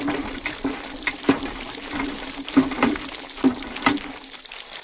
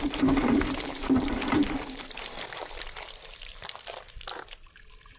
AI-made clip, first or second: second